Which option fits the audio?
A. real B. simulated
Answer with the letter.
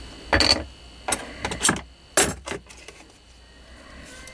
A